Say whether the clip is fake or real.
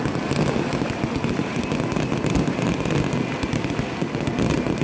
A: real